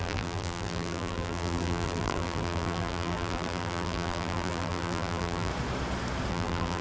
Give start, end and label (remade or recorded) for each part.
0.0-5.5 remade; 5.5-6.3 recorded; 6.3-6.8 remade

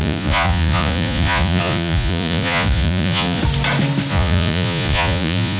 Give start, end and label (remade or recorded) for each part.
0.0-3.4 remade; 3.4-4.1 recorded; 4.1-5.6 remade

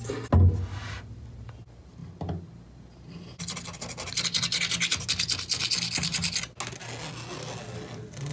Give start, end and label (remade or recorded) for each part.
0.0-8.3 recorded

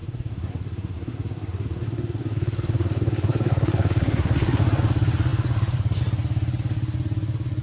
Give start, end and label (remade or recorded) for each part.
0.0-4.6 remade; 4.6-7.6 recorded